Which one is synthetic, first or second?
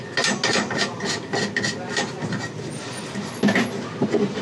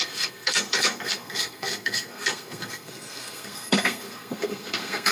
second